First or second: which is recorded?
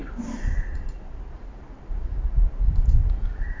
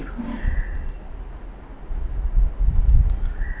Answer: second